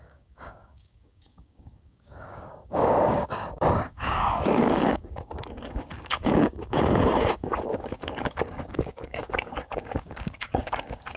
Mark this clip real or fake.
fake